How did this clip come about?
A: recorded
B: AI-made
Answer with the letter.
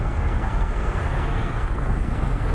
B